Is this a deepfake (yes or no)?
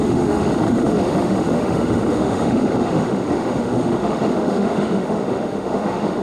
yes